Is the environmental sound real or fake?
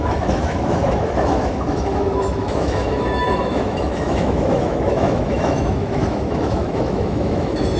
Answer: fake